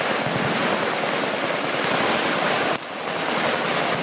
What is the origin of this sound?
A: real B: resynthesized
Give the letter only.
A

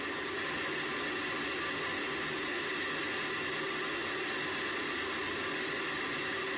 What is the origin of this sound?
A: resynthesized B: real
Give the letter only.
B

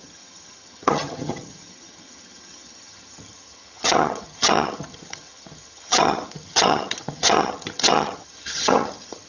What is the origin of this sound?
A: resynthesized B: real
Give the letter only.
A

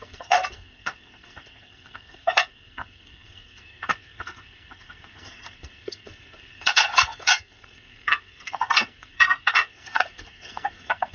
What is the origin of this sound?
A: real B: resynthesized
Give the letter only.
B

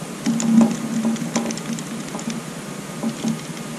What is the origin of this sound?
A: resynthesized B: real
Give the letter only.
B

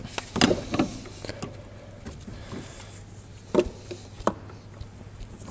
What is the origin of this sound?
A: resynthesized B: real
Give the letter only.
B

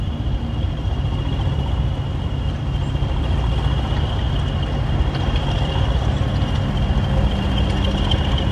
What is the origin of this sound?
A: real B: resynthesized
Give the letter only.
A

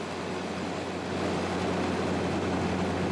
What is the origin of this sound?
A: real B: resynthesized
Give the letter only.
A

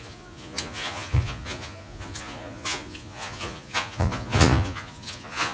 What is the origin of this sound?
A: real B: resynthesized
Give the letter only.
B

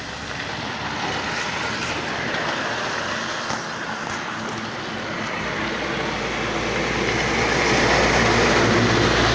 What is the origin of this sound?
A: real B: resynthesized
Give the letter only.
A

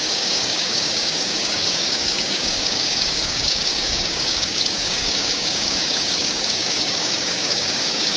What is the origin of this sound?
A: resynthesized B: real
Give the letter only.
A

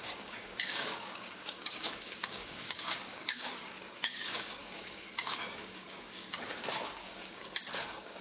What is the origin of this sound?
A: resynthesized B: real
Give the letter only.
A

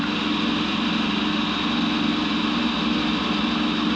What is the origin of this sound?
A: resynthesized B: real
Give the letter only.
B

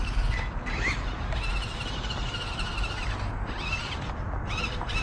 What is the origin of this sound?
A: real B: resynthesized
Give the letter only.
A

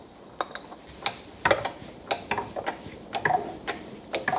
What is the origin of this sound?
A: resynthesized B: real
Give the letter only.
B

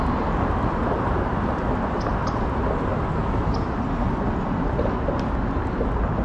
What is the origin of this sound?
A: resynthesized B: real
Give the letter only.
B